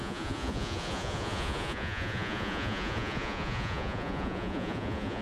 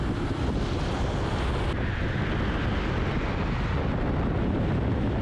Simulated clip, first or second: first